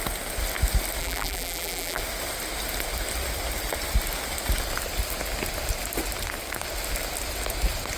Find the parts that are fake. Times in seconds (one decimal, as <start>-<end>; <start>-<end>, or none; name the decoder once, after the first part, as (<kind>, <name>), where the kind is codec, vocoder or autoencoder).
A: 1.0-2.0 (vocoder, BigVGAN v2)